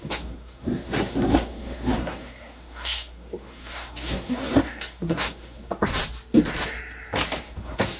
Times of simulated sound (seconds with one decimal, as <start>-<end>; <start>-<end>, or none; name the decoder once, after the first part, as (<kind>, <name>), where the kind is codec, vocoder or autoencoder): 0.0-5.9 (codec, SNAC); 7.4-8.0